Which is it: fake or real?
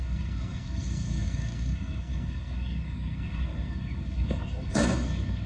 fake